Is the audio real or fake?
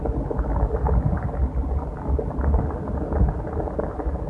real